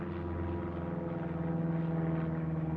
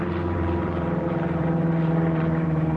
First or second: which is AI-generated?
second